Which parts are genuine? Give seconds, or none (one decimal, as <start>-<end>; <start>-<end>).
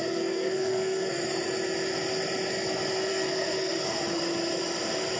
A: 1.2-3.1; 4.0-5.2